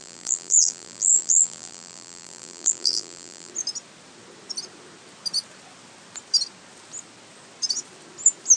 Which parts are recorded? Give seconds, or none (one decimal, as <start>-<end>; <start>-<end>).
3.5-8.6